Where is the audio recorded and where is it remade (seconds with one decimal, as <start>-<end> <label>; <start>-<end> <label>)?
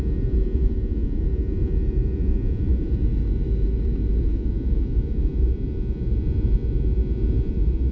0.0-3.1 remade; 3.1-4.2 recorded; 4.2-7.9 remade